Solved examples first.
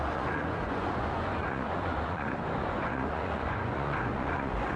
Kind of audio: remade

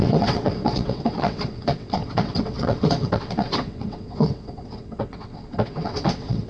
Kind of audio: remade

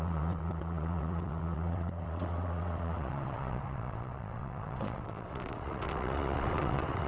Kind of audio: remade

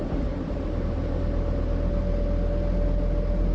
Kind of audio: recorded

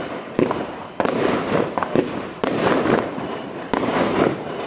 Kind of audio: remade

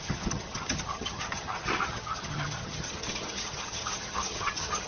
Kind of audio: remade